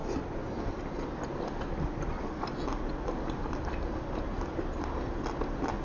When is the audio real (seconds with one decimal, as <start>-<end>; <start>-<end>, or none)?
0.0-5.8